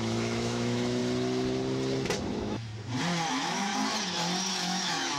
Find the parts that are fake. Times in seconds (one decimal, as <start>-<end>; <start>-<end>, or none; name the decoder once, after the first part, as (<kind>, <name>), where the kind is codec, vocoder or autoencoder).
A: 0.0-1.0 (autoencoder, DAC-VAE); 2.3-2.7; 3.3-3.7; 4.5-5.2